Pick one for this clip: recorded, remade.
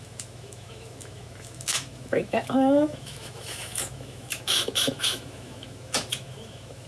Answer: remade